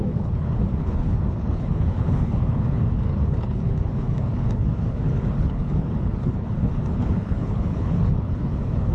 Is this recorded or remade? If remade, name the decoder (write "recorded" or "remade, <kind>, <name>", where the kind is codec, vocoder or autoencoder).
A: remade, codec, HILCodec